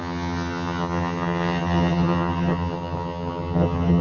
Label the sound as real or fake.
fake